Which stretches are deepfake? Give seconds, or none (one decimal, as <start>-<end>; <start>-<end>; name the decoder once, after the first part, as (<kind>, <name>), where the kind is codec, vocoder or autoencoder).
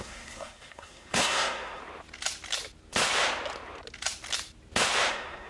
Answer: 0.0-1.8 (codec, SNAC); 5.1-5.5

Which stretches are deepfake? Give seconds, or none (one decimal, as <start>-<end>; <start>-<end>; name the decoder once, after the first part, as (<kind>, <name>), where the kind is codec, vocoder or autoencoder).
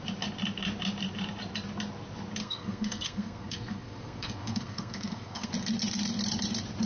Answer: 2.4-5.5 (codec, SNAC)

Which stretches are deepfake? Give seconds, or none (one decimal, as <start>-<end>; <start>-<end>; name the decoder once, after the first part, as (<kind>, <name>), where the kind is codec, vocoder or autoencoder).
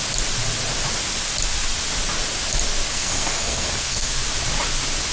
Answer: 2.9-4.1 (codec, SNAC)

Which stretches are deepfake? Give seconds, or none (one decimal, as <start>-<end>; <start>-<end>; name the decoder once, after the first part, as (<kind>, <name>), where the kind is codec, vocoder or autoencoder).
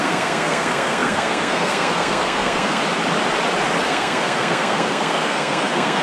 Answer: 0.0-2.8 (codec, SNAC); 3.8-6.0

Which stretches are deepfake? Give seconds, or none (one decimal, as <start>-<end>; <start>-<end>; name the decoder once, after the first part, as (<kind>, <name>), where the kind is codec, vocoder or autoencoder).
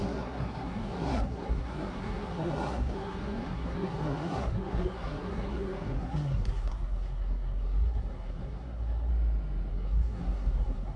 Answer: 0.0-9.1 (codec, SNAC); 9.7-11.0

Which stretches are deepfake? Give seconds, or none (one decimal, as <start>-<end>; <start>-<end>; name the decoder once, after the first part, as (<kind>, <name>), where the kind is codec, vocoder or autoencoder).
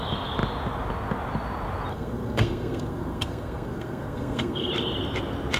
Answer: 1.9-4.7 (codec, SNAC)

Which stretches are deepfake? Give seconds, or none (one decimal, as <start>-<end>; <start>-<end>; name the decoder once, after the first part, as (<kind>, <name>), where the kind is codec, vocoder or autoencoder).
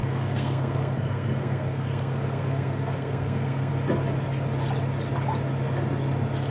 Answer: 0.0-3.7 (codec, SNAC)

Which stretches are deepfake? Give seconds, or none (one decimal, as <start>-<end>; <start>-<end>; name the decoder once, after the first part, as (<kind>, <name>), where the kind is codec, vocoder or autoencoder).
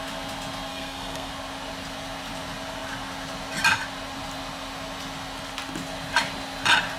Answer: 0.7-1.3 (codec, SNAC)